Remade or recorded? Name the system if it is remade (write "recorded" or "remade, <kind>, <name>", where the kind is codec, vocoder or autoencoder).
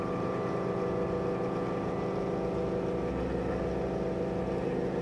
recorded